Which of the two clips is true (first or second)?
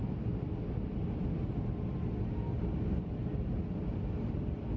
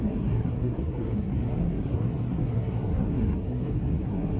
first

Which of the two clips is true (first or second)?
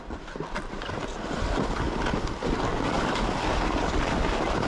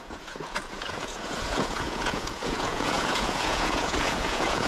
first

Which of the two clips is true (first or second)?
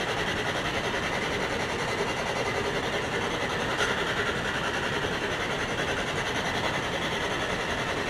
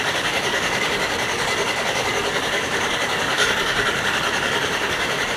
first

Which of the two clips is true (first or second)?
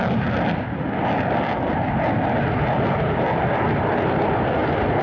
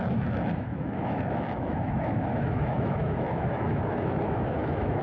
first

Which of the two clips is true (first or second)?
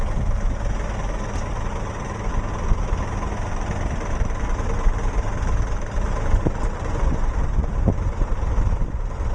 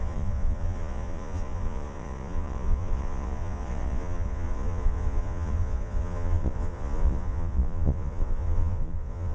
first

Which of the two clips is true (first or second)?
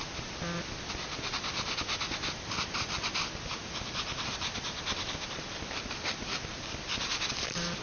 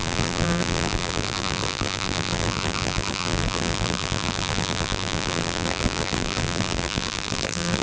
first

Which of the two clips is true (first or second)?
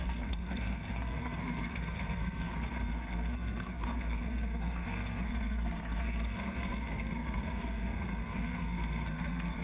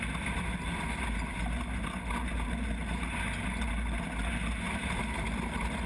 second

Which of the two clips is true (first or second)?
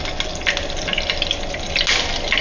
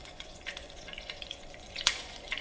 first